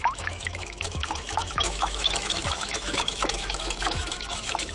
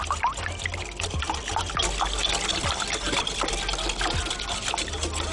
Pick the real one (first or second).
second